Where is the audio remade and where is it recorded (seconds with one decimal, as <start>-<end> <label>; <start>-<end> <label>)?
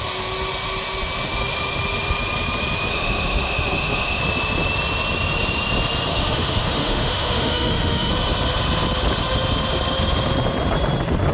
0.0-2.9 recorded; 2.9-4.2 remade; 4.2-6.1 recorded; 6.1-8.1 remade; 8.1-11.3 recorded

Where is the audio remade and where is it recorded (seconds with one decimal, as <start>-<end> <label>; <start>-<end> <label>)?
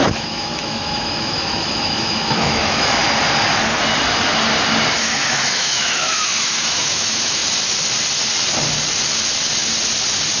0.0-3.0 remade; 3.0-5.0 recorded; 5.0-7.4 remade; 7.4-10.4 recorded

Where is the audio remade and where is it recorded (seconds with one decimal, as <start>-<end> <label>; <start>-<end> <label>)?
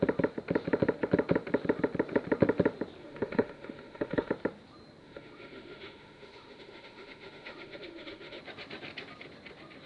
0.0-3.0 recorded; 3.0-4.3 remade; 4.3-5.0 recorded; 5.0-8.4 remade; 8.4-9.9 recorded